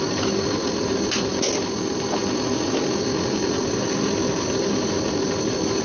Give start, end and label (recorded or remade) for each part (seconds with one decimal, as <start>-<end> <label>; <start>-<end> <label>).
0.0-5.8 recorded